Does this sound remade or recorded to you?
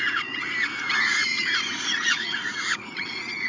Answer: remade